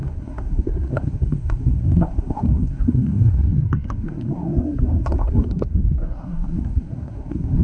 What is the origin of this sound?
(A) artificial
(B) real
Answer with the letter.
A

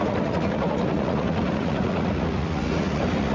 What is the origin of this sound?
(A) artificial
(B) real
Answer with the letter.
A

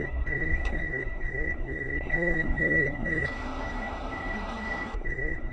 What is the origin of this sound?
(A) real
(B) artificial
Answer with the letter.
B